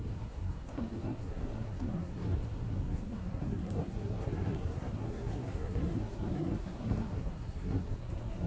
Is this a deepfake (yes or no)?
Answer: yes